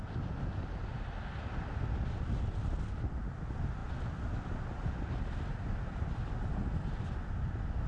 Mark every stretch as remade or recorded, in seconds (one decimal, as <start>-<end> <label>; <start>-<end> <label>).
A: 0.0-7.9 recorded